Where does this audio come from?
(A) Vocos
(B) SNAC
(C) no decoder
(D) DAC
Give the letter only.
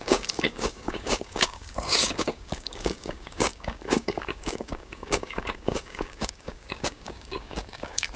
D